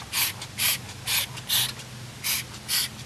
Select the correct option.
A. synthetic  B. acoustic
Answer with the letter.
B